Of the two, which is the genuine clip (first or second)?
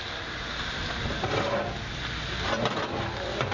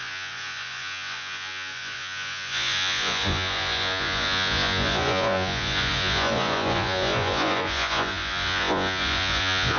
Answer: first